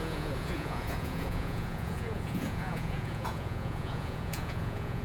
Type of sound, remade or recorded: remade